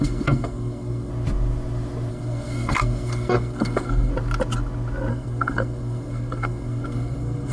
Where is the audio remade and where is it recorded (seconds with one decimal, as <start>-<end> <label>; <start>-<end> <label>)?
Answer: 0.0-1.1 remade; 1.1-2.1 recorded; 2.1-4.1 remade; 4.1-5.1 recorded; 5.1-7.5 remade